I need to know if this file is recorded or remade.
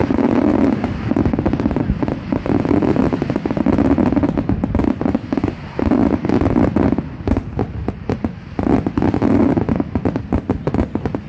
recorded